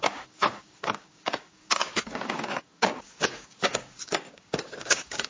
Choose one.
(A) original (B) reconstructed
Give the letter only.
B